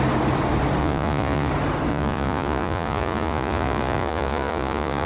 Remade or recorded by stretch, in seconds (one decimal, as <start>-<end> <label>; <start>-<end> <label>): 0.0-0.8 recorded; 0.8-1.5 remade; 1.5-1.9 recorded; 1.9-5.1 remade